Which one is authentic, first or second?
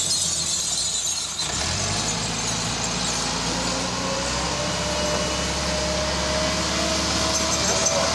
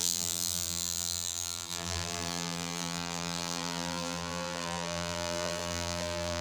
first